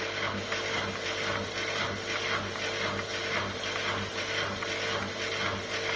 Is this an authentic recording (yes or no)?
yes